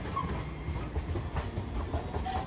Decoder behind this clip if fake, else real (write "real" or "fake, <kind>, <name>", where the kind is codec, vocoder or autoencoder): real